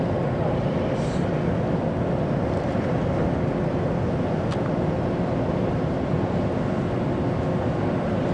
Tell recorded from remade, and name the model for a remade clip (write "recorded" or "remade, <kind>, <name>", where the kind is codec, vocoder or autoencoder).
recorded